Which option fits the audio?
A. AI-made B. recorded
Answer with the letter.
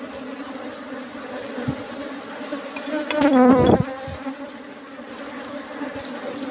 B